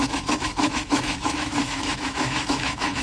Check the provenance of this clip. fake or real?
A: fake